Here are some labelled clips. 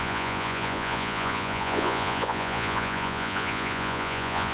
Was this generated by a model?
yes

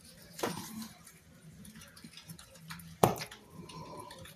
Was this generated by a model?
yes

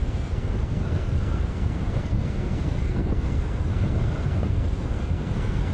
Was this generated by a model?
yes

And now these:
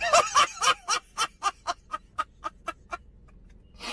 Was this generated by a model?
no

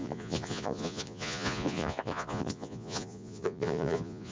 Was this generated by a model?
yes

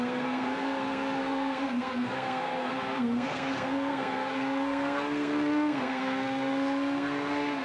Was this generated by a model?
yes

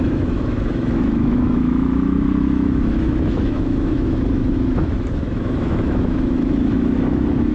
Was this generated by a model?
yes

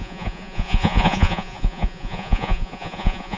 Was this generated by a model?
yes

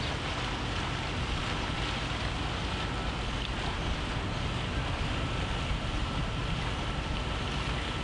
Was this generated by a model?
no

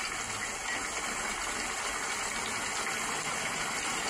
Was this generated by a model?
no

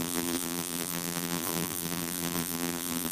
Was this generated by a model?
yes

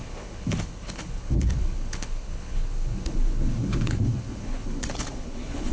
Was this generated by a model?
yes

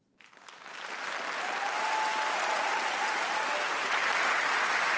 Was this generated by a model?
no